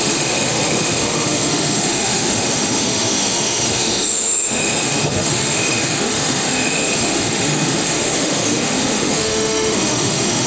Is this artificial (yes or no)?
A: yes